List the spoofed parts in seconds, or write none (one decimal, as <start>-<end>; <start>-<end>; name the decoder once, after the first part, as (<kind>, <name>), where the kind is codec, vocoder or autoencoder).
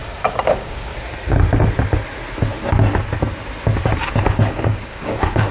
0.5-0.9 (codec, DAC); 4.2-5.5